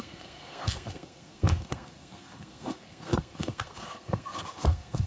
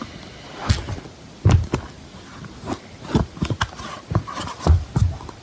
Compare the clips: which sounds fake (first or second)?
first